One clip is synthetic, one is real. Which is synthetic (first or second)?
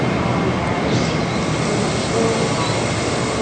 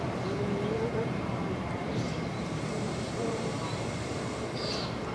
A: second